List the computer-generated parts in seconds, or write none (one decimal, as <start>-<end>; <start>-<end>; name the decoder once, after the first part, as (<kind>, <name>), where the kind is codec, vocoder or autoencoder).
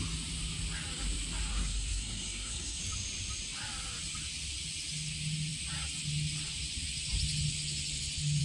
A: 1.5-2.8 (codec, SNAC)